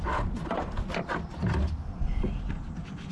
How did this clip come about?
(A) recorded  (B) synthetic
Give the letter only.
A